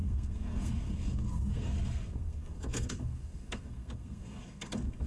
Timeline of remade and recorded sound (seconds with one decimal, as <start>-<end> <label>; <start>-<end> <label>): 0.0-5.1 remade